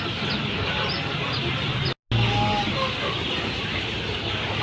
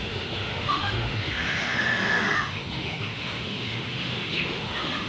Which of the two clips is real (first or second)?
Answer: first